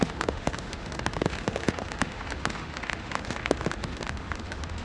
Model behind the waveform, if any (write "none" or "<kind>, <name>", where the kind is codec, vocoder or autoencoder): autoencoder, DAC-VAE